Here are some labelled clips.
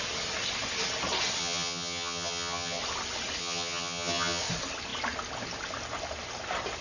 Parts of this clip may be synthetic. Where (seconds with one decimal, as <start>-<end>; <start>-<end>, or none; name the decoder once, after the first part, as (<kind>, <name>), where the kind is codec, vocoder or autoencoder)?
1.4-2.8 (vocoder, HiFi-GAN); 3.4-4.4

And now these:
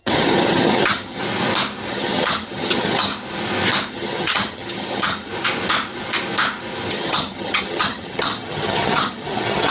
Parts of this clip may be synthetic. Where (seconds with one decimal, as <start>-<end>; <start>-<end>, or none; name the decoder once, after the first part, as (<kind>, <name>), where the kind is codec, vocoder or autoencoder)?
0.0-1.2 (vocoder, HiFi-GAN); 1.9-3.1; 3.9-5.3; 6.9-9.7

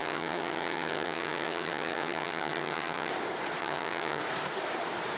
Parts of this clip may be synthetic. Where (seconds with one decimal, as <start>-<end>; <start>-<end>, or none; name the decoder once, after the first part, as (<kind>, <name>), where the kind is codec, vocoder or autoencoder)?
0.0-3.1 (vocoder, HiFi-GAN); 3.6-4.2

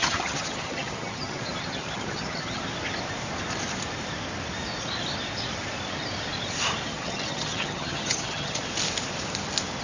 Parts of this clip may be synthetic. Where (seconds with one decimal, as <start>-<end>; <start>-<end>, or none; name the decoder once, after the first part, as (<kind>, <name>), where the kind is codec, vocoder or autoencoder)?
0.0-2.6 (vocoder, HiFi-GAN); 6.9-8.6